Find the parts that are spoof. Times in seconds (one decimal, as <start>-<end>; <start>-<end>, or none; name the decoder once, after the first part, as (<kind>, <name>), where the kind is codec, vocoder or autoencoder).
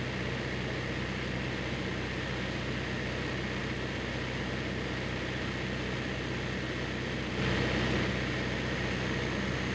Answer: none